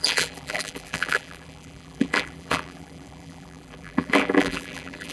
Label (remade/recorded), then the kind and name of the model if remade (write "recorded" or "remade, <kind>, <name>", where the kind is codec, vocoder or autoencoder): remade, vocoder, BigVGAN v2